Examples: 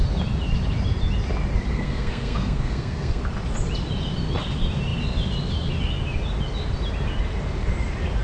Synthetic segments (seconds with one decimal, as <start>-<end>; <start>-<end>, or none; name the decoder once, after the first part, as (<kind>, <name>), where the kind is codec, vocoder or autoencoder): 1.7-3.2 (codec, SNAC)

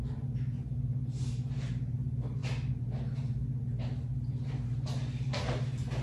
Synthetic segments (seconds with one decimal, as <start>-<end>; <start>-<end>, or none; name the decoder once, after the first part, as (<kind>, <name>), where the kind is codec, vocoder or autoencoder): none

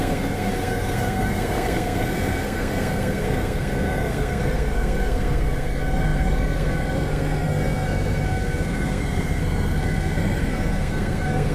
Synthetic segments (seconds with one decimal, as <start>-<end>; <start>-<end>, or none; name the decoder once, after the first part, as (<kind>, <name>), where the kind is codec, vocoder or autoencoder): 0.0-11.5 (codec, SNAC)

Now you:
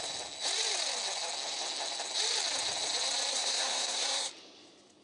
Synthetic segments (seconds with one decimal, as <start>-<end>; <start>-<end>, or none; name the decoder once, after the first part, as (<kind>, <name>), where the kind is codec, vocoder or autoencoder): 3.3-4.3 (codec, SNAC)

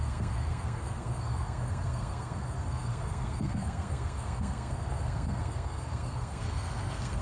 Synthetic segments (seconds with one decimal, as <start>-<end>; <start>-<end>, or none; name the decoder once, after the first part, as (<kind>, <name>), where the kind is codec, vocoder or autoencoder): 0.0-7.2 (codec, SNAC)

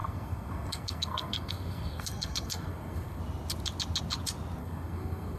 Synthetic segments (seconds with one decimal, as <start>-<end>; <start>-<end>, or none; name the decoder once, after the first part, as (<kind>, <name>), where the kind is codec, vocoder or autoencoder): 0.0-3.2 (codec, SNAC); 4.6-5.4

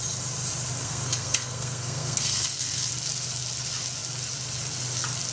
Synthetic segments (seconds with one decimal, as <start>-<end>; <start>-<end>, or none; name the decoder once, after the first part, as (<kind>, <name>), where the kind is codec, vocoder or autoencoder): 0.8-2.9 (codec, SNAC)

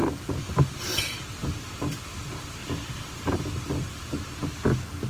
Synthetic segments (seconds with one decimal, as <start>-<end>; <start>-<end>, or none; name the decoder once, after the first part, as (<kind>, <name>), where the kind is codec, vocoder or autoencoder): none